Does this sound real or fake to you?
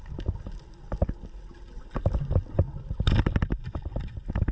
real